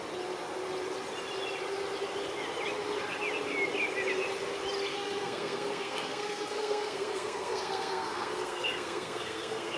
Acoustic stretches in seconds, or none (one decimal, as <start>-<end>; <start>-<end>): 0.0-4.9

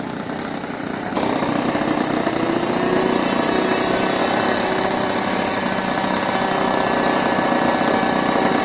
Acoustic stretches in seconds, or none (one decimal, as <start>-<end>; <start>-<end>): 0.0-8.6